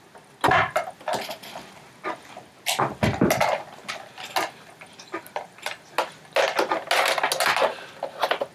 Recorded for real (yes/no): yes